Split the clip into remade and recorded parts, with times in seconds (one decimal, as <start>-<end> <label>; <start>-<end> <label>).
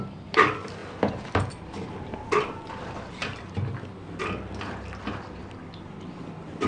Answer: 0.0-3.2 remade; 3.2-5.4 recorded; 5.4-6.7 remade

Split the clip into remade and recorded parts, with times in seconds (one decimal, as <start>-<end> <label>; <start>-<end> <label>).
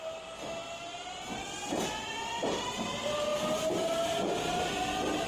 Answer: 0.0-5.3 recorded